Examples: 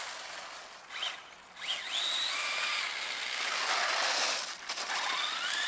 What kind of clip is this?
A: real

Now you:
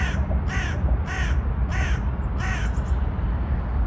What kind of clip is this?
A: real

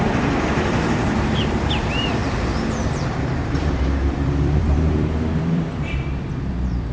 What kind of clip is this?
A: fake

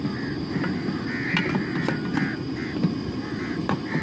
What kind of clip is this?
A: real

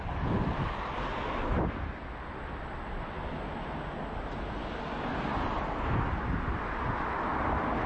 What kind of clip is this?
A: real